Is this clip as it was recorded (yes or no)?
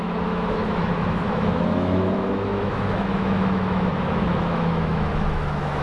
no